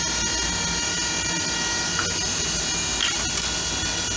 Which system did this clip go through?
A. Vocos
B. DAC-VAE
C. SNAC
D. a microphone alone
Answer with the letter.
D